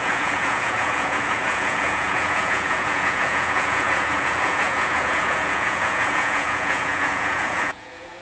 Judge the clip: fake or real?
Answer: fake